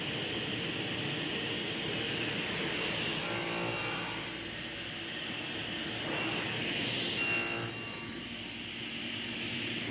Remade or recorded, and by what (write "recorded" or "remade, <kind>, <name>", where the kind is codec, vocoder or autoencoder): recorded